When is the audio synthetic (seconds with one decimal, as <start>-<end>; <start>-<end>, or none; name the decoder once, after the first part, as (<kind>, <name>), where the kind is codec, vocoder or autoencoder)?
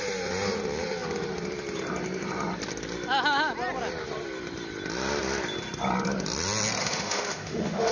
6.8-7.9 (autoencoder, DAC-VAE)